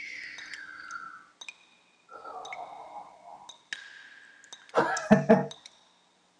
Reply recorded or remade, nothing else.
recorded